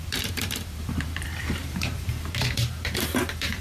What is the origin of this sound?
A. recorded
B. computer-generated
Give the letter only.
B